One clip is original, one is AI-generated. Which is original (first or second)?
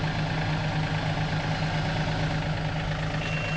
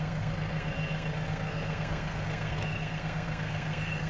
first